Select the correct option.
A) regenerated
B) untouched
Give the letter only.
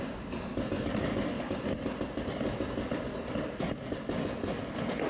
B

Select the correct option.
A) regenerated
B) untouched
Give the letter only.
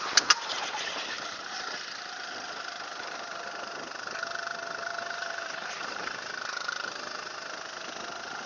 B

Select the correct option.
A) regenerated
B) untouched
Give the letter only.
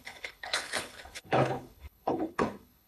A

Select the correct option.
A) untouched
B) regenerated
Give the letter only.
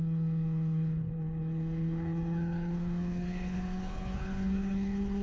B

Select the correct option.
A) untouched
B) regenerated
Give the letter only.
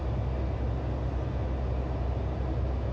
A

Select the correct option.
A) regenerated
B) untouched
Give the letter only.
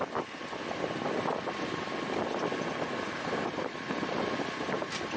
B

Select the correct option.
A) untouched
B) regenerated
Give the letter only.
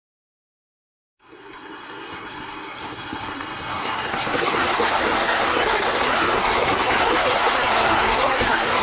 B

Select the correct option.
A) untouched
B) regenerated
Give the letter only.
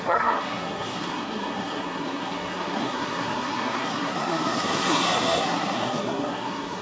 B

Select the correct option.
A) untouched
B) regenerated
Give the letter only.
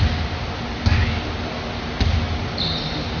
A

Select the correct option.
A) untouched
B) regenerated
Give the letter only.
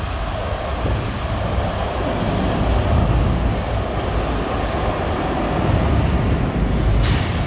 A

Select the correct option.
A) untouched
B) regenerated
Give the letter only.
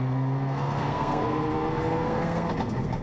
B